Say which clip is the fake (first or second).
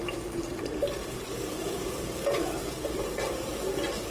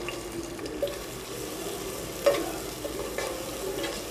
first